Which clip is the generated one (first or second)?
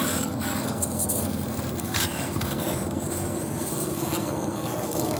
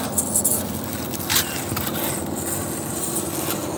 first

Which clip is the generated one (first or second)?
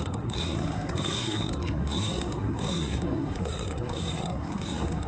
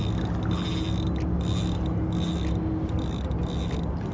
first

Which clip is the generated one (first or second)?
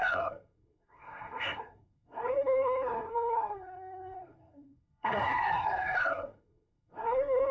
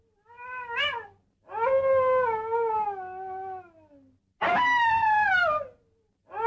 first